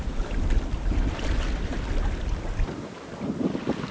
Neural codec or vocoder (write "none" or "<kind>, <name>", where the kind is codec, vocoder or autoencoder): none